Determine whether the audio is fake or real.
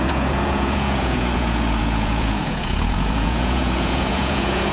fake